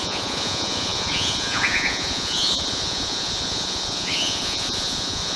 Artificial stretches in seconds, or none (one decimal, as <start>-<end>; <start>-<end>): 0.0-5.4